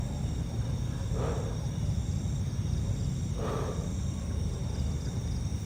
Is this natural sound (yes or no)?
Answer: yes